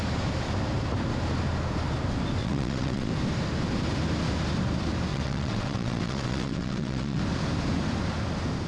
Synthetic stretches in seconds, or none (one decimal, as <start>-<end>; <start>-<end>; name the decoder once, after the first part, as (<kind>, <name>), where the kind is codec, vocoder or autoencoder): 2.4-3.1 (vocoder, WaveNeXt); 5.1-7.2